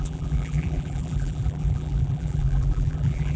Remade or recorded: remade